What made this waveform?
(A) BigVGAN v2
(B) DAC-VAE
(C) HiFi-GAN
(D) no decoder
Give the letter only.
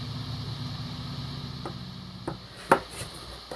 D